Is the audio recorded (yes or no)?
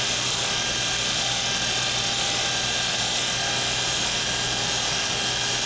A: yes